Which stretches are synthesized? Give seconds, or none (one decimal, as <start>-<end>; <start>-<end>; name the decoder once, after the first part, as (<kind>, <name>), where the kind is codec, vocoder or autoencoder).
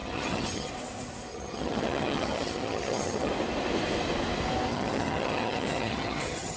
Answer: 0.0-0.7 (vocoder, HiFi-GAN); 1.3-3.3; 4.7-6.6